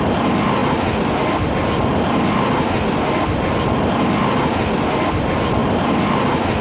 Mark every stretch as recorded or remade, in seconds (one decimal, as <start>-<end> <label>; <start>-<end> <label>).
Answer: 0.0-5.6 recorded; 5.6-6.6 remade